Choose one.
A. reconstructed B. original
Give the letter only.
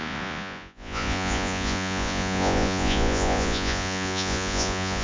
A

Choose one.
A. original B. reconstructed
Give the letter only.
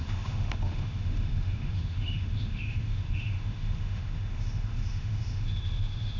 B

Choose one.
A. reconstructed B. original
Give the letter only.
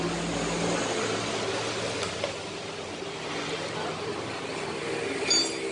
B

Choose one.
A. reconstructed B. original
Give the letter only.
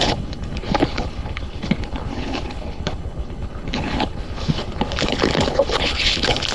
A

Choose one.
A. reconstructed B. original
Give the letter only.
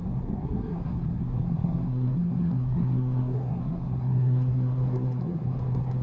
A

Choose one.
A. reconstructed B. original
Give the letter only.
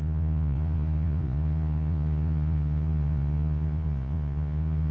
A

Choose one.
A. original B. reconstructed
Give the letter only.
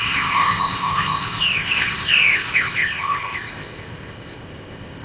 B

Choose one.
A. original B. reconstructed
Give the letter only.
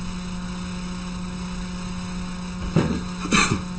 A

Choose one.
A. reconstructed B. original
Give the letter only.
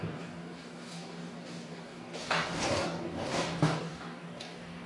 A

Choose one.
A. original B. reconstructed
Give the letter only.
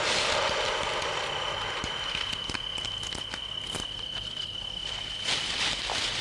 A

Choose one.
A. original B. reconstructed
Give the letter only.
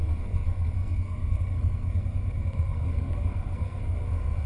B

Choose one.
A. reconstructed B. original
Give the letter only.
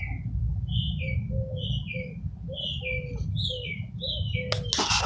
B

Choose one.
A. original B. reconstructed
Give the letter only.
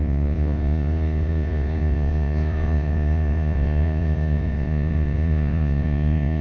B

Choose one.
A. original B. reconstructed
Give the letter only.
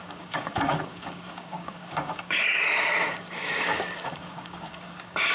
B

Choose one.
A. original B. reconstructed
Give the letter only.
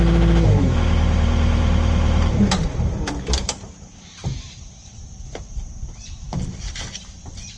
B